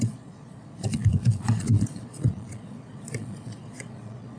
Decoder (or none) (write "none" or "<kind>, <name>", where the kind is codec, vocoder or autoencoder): vocoder, Vocos